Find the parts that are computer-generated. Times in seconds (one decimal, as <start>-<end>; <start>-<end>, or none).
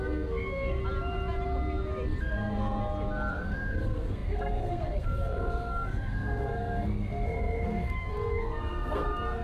0.0-0.8; 2.2-2.8; 3.3-9.4